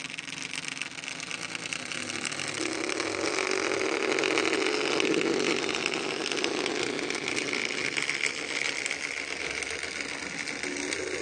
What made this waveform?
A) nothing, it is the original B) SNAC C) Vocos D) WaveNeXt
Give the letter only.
A